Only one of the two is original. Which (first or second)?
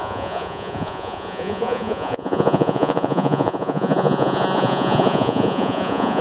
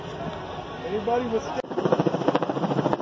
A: second